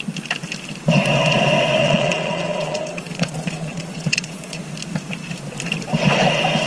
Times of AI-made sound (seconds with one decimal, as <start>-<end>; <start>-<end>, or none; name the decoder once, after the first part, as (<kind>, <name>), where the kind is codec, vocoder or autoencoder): 1.8-4.6 (vocoder, Vocos)